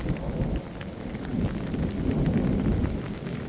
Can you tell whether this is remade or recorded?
recorded